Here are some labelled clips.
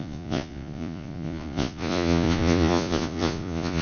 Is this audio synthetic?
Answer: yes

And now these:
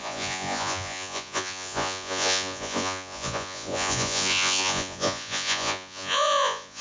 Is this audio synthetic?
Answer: yes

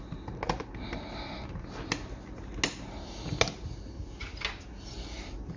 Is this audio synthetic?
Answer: no